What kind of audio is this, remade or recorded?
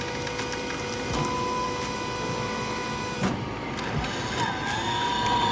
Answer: recorded